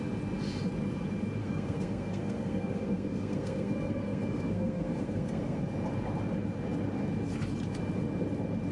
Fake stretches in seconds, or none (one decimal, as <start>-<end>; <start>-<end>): 1.4-5.6